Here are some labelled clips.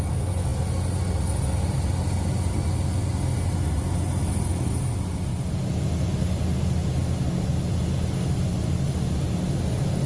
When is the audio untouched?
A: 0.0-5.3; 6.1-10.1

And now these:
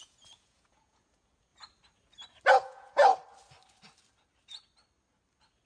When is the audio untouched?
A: 1.5-2.5; 3.0-5.7